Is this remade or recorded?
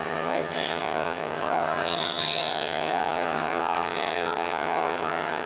remade